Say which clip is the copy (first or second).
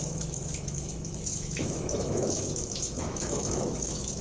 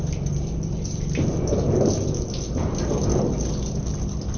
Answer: first